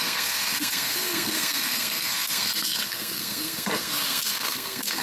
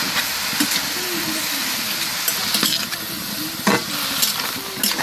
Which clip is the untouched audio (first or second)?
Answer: second